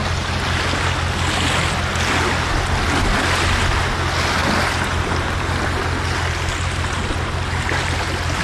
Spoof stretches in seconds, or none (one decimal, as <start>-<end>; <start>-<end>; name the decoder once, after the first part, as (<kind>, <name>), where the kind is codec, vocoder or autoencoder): none